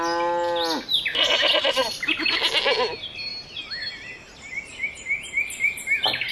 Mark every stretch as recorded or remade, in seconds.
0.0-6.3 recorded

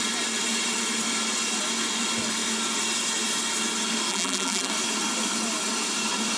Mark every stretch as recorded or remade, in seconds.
0.0-4.1 recorded; 4.1-4.7 remade; 4.7-6.4 recorded

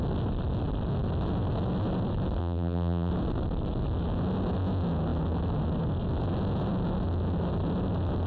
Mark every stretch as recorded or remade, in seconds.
0.0-2.4 recorded; 2.4-3.1 remade; 3.1-8.3 recorded

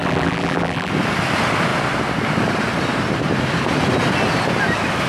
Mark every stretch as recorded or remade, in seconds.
0.0-0.9 remade; 0.9-5.1 recorded

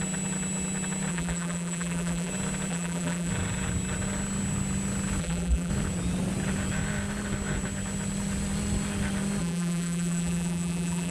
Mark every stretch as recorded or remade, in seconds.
0.0-1.1 recorded; 1.1-2.3 remade; 2.3-2.7 recorded; 2.7-3.3 remade; 3.3-5.2 recorded; 5.2-5.7 remade; 5.7-9.4 recorded; 9.4-11.1 remade